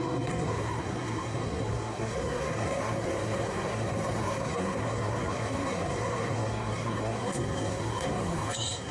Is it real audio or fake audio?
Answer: fake